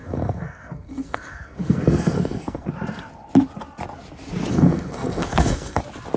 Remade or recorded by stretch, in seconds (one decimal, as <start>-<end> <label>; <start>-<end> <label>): 0.0-2.7 remade; 2.7-4.5 recorded; 4.5-5.8 remade; 5.8-6.2 recorded